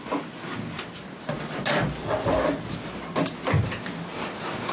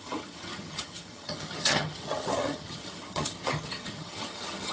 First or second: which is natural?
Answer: first